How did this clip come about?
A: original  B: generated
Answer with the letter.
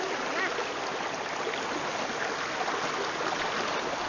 A